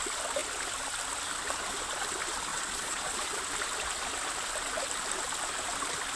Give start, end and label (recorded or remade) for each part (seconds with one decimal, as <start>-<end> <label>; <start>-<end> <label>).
0.0-2.5 recorded; 2.5-3.4 remade; 3.4-6.2 recorded